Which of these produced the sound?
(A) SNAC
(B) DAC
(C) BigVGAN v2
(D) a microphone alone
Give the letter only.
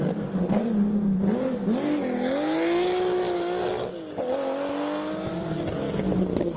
D